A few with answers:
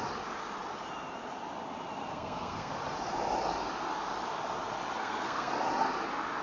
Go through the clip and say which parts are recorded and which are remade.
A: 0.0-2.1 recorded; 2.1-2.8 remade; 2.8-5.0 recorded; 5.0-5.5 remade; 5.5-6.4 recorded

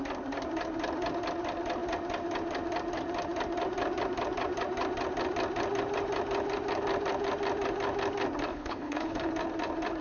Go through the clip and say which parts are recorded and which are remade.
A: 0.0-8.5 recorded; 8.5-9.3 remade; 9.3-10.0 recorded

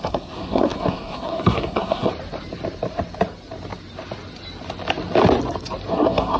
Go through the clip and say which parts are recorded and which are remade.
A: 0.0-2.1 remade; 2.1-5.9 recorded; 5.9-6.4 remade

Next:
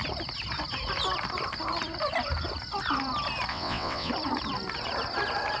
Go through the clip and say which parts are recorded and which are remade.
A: 0.0-3.5 recorded; 3.5-4.1 remade; 4.1-5.6 recorded

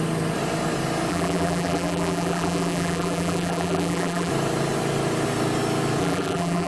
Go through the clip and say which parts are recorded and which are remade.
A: 0.0-1.1 recorded; 1.1-4.3 remade; 4.3-6.0 recorded; 6.0-6.7 remade

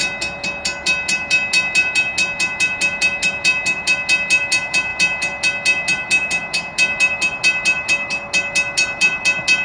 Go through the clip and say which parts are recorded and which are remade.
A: 0.0-9.6 recorded

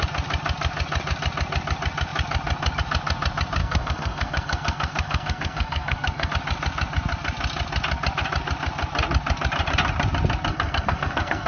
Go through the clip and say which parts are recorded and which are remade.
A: 0.0-3.6 recorded; 3.6-6.3 remade; 6.3-10.5 recorded; 10.5-11.5 remade

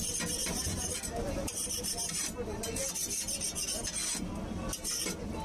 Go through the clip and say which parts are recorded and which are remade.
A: 0.0-0.4 recorded; 0.4-2.2 remade; 2.2-5.4 recorded